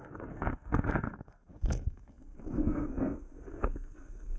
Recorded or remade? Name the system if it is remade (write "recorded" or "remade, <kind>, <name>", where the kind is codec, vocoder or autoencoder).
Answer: remade, codec, SNAC